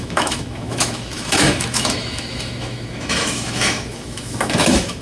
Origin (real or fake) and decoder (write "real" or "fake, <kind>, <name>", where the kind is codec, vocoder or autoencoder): fake, autoencoder, DAC-VAE